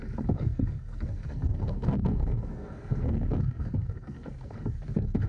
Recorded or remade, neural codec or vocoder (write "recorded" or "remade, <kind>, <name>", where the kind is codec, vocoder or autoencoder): remade, codec, SNAC